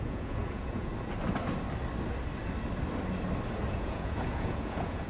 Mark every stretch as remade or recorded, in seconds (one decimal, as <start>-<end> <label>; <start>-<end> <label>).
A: 0.0-0.9 remade; 0.9-3.7 recorded; 3.7-5.1 remade